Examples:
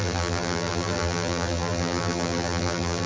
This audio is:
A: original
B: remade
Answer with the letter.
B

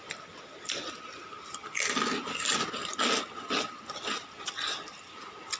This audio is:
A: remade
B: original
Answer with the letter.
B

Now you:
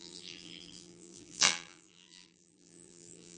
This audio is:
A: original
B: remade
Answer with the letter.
B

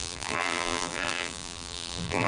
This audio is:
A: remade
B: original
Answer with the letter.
A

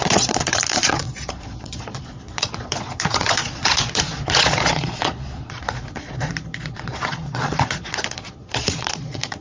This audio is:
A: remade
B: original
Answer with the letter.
A